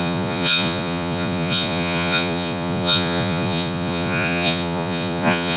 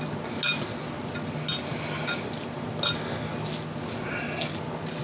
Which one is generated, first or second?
first